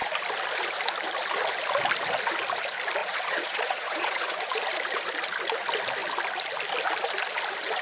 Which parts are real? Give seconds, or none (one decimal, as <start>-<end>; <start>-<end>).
0.0-3.0; 4.4-7.8